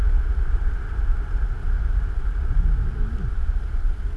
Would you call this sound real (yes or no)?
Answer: yes